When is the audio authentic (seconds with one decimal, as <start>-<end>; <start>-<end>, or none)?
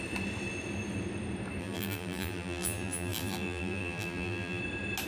0.0-1.6; 4.6-5.1